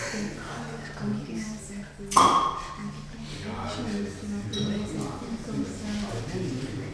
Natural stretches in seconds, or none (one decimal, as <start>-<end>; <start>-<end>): 0.0-6.9